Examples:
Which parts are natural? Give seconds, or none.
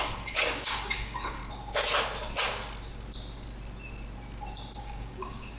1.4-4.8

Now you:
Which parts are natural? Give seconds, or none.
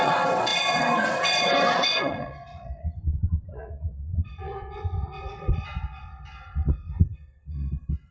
none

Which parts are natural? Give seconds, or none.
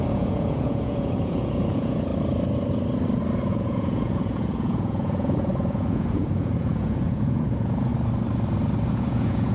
2.1-3.5; 7.9-8.9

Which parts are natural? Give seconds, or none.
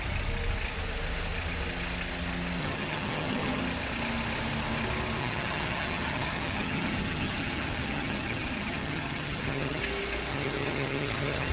0.0-2.6; 3.6-5.2; 9.8-10.3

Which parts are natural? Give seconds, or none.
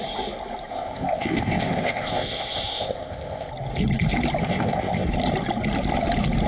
0.0-0.7; 3.5-4.4; 5.1-6.5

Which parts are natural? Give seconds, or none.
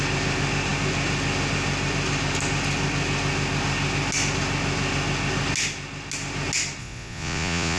0.0-6.8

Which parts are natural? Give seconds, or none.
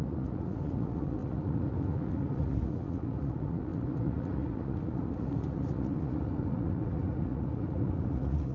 none